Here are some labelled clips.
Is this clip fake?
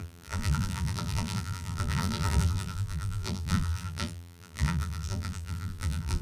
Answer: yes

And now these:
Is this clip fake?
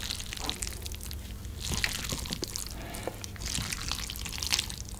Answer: no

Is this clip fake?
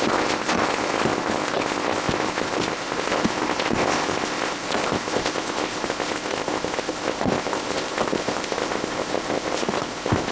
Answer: yes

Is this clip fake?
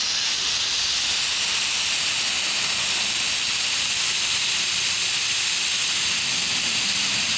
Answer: no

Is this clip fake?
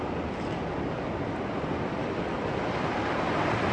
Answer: no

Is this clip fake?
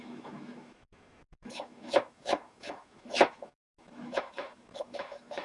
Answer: yes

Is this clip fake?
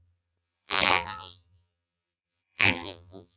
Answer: yes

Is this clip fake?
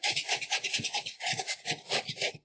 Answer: yes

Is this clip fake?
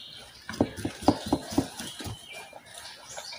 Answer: no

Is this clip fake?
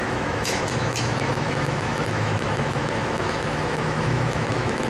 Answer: yes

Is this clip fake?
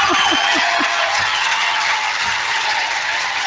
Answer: yes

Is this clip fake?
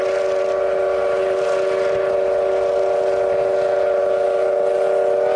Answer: no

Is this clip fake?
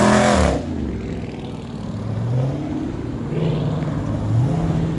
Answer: no